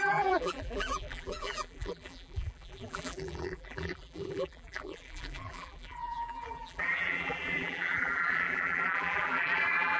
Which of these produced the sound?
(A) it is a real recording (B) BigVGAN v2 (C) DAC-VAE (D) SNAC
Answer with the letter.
B